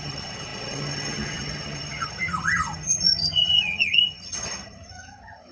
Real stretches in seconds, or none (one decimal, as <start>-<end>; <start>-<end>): none